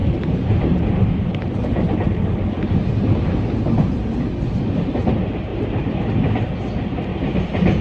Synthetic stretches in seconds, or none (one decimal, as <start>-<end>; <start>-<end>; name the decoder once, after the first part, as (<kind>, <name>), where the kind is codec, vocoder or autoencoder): 0.0-2.4 (vocoder, BigVGAN v2); 5.5-6.1; 7.1-7.8